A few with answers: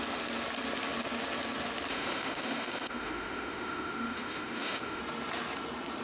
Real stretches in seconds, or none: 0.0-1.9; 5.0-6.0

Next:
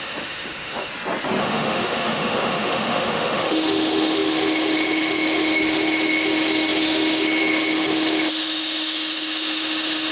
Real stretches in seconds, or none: 0.9-1.4

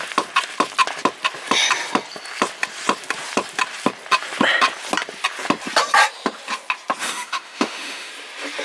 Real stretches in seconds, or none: 0.0-7.0; 8.1-8.6

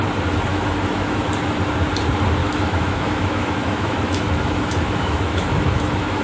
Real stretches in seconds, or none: 0.0-0.5; 1.2-2.4

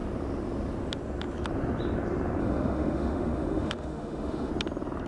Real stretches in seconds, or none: 0.0-2.4; 4.5-5.1

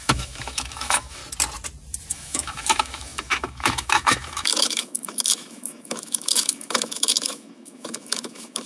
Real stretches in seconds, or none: 1.2-2.1